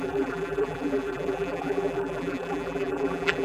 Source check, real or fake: fake